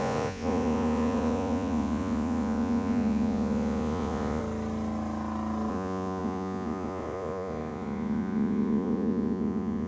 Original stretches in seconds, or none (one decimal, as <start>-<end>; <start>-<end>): 4.4-5.7